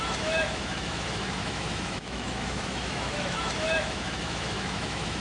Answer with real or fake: fake